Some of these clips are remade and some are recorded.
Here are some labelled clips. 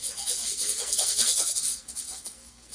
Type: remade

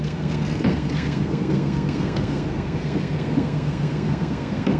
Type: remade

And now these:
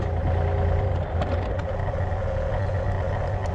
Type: recorded